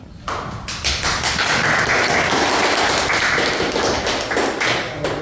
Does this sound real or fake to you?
real